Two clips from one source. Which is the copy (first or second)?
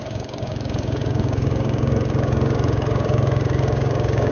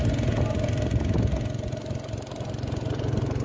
first